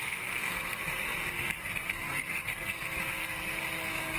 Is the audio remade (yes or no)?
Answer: yes